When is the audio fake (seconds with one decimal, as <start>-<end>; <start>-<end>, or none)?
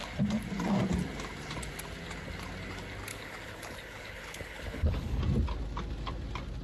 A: 3.1-5.2